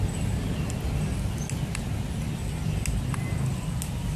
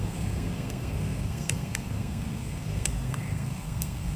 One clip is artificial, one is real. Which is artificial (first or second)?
second